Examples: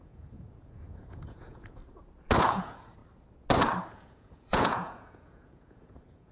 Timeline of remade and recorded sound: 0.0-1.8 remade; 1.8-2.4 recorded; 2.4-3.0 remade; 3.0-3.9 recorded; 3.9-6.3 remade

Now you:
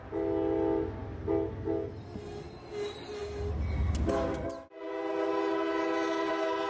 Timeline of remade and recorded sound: 0.0-6.7 recorded

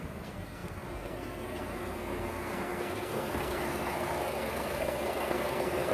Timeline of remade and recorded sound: 0.0-5.9 remade

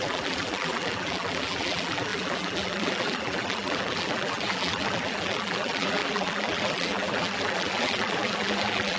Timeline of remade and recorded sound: 0.0-9.0 remade